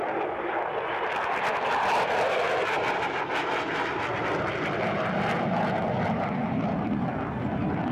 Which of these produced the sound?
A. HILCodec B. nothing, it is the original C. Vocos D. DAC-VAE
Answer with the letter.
B